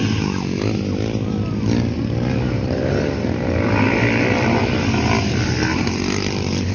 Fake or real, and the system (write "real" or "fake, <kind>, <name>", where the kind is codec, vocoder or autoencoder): real